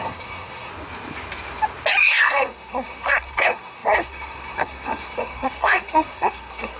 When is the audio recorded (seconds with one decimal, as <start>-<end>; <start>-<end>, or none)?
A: 0.7-2.0